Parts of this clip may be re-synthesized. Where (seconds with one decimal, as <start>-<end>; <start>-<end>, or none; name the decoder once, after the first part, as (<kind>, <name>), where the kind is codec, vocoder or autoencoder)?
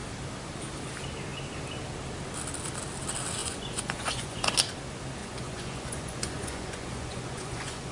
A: 3.4-4.5 (vocoder, Vocos); 5.2-7.9